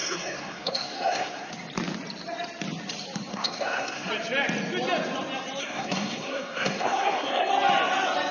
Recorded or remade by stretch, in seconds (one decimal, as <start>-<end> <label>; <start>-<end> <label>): 0.0-1.5 remade; 1.5-3.3 recorded; 3.3-4.1 remade; 4.1-5.6 recorded; 5.6-7.5 remade; 7.5-8.3 recorded